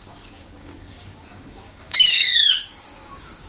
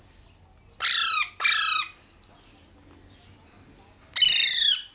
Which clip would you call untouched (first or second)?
second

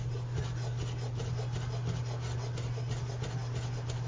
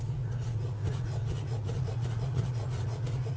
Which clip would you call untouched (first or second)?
first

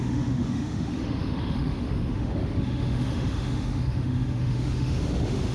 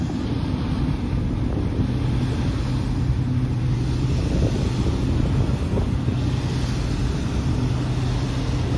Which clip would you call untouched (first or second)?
second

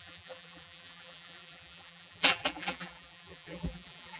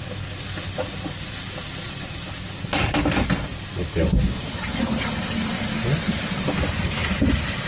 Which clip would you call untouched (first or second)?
second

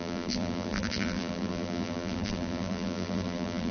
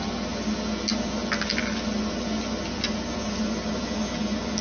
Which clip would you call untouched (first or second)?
second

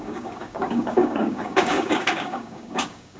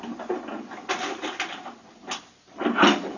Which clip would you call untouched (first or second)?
second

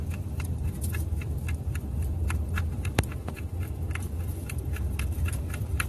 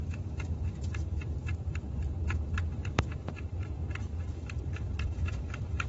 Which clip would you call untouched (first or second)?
first